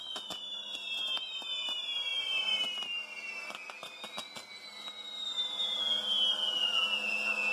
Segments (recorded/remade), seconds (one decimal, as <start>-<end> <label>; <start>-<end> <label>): 0.0-7.5 recorded